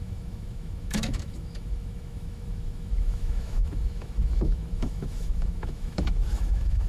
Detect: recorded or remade remade